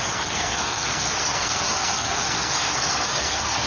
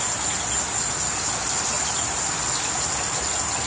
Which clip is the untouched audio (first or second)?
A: second